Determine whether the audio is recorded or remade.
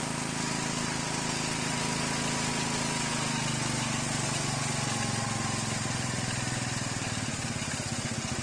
recorded